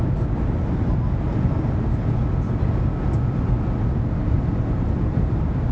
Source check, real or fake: real